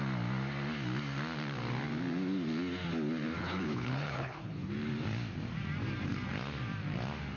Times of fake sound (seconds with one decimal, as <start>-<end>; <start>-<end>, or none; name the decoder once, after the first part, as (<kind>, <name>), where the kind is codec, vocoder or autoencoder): 3.4-4.7 (codec, HILCodec)